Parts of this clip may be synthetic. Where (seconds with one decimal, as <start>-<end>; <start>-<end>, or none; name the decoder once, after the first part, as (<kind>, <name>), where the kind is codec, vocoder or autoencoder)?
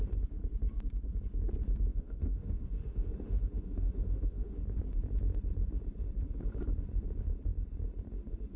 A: 1.9-4.6 (autoencoder, DAC-VAE)